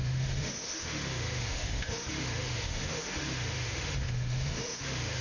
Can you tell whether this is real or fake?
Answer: fake